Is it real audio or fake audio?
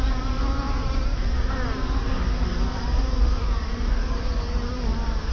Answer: fake